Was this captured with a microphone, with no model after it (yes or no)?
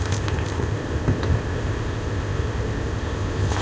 no